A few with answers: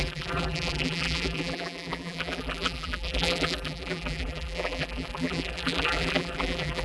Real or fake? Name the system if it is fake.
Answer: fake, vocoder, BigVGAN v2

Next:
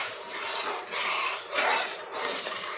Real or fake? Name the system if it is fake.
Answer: fake, vocoder, BigVGAN v2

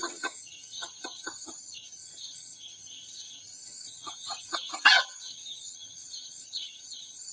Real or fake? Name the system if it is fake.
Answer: fake, vocoder, HiFi-GAN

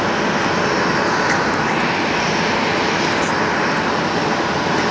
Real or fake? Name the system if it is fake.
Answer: real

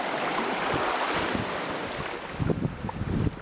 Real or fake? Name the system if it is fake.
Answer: real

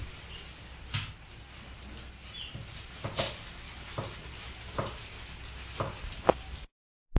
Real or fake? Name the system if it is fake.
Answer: real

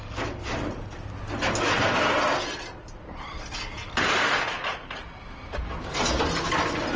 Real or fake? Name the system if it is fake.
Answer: real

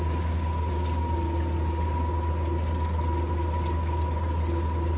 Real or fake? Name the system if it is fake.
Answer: real